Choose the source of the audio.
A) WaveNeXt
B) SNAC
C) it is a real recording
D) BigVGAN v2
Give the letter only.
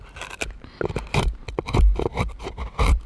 D